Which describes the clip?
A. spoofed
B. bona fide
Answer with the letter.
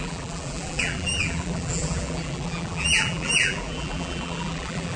A